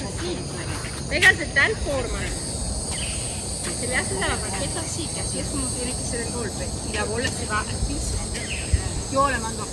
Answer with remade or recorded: recorded